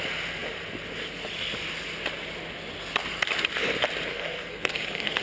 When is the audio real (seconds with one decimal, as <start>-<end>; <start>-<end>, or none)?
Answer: 0.0-4.1